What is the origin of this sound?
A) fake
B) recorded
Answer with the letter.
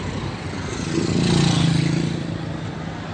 B